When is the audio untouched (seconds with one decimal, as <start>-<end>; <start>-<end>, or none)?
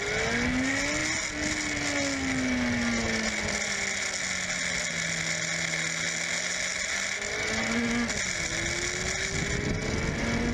0.0-10.5